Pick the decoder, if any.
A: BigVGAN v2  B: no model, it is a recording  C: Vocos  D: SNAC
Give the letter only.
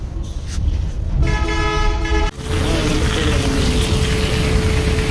B